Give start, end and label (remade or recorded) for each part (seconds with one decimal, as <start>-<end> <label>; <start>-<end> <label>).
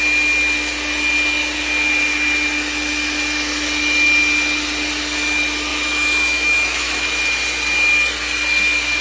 0.0-5.7 recorded; 5.7-7.2 remade; 7.2-9.0 recorded